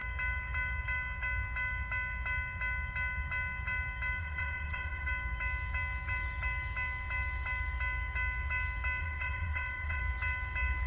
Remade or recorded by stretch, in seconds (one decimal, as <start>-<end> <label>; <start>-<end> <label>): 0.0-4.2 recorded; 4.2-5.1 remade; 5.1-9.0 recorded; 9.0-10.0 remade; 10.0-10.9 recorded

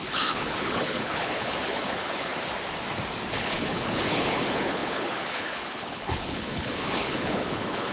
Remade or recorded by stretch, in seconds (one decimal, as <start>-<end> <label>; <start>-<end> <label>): 0.0-2.3 remade; 2.3-3.3 recorded; 3.3-7.9 remade

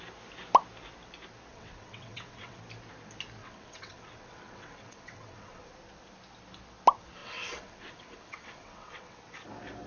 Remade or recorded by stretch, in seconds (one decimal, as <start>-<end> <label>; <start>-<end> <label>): 0.0-1.5 recorded; 1.5-2.6 remade; 2.6-3.4 recorded; 3.4-5.6 remade; 5.6-7.2 recorded; 7.2-9.2 remade; 9.2-9.9 recorded

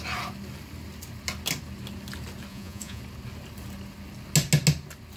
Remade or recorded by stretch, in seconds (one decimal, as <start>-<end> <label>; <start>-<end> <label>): 0.0-2.5 recorded; 2.5-3.0 remade; 3.0-5.2 recorded